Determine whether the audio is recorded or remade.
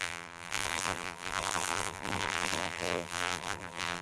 remade